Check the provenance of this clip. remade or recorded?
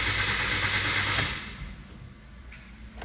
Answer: recorded